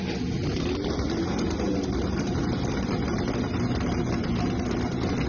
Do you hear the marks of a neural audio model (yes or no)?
no